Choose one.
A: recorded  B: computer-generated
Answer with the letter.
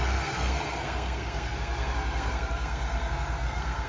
B